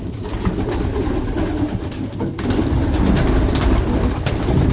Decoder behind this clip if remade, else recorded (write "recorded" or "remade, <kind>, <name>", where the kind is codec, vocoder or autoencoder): recorded